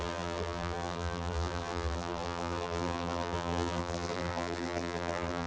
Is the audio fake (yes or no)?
yes